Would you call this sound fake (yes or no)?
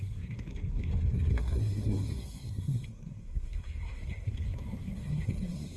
yes